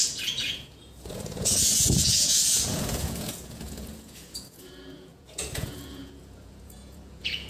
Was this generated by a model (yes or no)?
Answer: yes